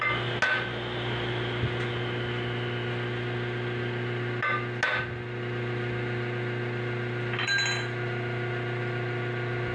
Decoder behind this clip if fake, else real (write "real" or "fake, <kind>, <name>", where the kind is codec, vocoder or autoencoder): real